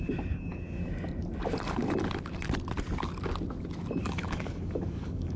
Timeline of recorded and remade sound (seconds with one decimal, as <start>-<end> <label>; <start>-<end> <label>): 0.0-0.8 remade; 0.8-4.0 recorded; 4.0-5.4 remade